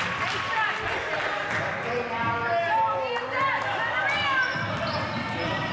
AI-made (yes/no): no